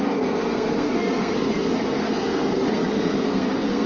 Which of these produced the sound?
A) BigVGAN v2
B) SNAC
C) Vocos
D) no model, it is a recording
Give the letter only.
B